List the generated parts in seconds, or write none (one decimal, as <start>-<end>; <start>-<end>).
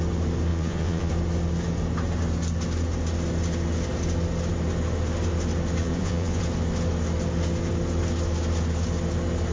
0.5-1.1; 5.8-6.4